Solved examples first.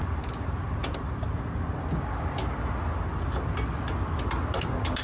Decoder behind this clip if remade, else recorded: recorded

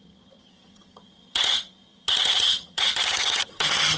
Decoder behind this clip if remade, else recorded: remade, vocoder, HiFi-GAN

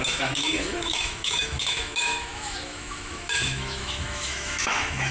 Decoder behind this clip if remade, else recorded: remade, autoencoder, DAC-VAE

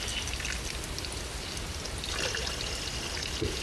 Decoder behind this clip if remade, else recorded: recorded